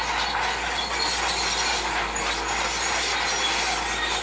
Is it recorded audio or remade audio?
recorded